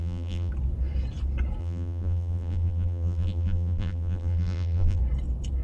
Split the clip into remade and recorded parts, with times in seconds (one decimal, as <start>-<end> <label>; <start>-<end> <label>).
0.0-0.5 remade; 0.5-1.6 recorded; 1.6-5.0 remade; 5.0-5.6 recorded